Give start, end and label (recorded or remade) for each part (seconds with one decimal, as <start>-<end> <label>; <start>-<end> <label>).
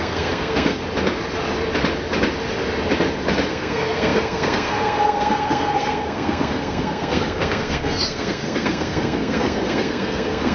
0.0-0.8 remade; 0.8-3.5 recorded; 3.5-10.5 remade